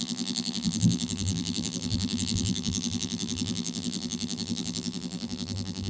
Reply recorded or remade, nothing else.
remade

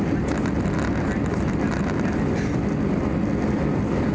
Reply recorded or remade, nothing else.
recorded